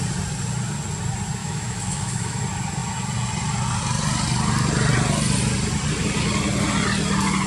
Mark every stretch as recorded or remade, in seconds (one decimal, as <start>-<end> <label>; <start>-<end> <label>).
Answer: 0.0-1.4 recorded; 1.4-2.4 remade; 2.4-7.5 recorded